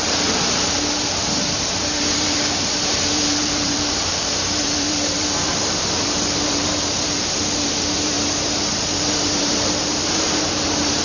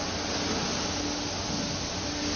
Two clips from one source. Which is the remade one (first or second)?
first